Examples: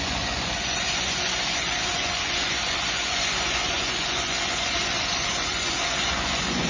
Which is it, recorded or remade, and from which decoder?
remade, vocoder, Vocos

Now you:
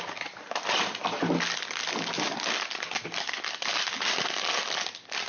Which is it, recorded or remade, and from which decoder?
recorded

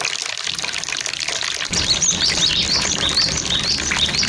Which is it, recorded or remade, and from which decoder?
recorded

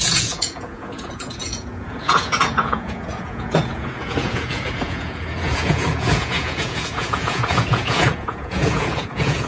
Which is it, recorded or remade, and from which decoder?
remade, vocoder, Vocos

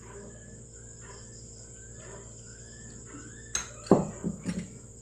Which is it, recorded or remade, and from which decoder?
recorded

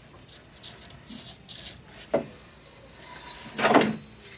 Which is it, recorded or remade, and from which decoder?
recorded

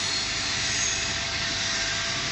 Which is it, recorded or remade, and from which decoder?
recorded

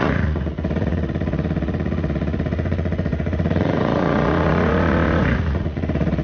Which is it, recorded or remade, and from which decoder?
remade, vocoder, Vocos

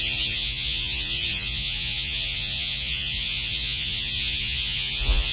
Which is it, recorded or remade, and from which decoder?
remade, vocoder, Vocos